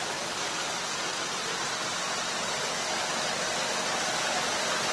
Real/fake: real